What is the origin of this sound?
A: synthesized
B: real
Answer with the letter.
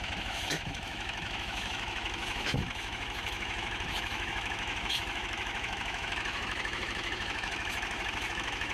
A